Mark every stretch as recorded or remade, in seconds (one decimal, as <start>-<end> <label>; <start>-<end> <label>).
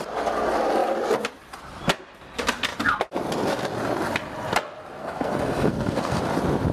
0.0-5.0 recorded; 5.0-6.2 remade; 6.2-6.7 recorded